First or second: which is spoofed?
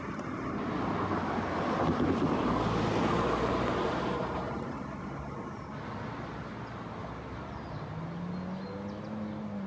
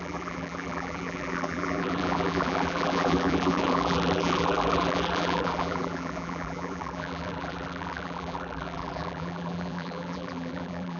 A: second